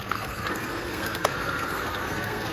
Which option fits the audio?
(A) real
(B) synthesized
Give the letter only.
B